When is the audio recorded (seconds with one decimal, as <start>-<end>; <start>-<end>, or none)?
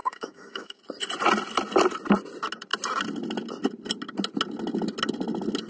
0.8-5.7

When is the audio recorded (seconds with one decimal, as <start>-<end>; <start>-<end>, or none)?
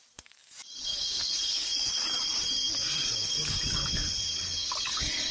3.8-4.4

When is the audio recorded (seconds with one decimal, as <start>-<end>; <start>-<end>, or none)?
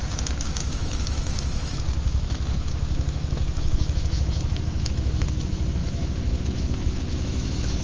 none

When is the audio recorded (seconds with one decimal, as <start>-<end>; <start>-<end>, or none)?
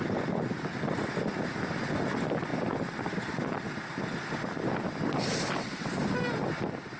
0.0-7.0